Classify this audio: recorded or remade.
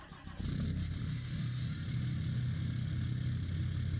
recorded